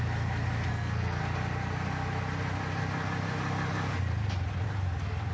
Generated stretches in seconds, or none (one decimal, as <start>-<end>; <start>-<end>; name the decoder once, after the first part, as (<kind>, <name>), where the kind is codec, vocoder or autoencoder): 0.7-1.2 (codec, SNAC)